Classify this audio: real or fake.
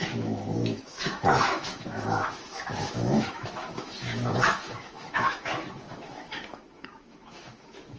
fake